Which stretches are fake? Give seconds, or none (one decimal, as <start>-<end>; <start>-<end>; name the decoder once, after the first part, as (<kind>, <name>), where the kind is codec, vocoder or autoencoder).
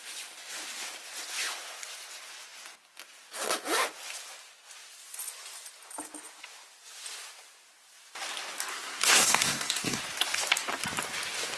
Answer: 8.7-10.0 (codec, SNAC)